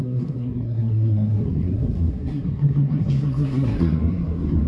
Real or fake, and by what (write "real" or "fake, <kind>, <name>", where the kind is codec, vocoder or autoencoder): fake, codec, SNAC